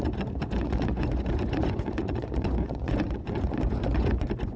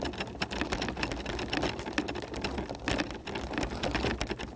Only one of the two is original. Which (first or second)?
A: second